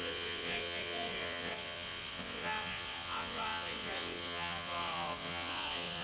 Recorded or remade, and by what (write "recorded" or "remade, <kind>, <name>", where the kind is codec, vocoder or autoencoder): remade, vocoder, WaveNeXt